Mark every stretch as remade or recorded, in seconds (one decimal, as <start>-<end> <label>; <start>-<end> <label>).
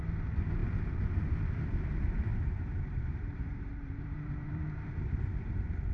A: 0.0-2.3 recorded; 2.3-5.5 remade; 5.5-5.9 recorded